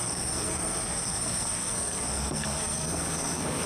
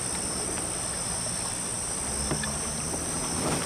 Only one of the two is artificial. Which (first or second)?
first